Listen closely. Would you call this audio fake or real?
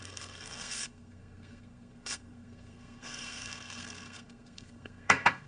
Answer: fake